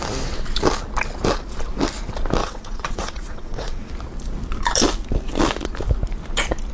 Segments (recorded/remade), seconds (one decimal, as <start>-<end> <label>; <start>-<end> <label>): 0.0-2.4 recorded; 2.4-3.9 remade; 3.9-6.7 recorded